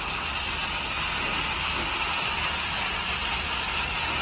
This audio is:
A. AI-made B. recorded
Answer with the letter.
B